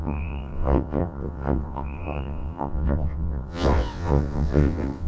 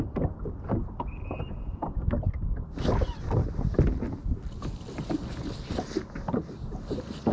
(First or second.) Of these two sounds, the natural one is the second